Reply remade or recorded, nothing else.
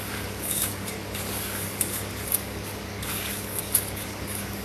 remade